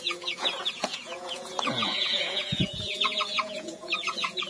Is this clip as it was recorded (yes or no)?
no